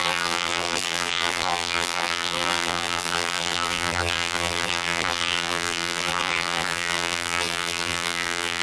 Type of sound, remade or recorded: remade